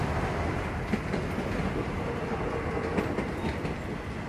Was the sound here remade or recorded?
recorded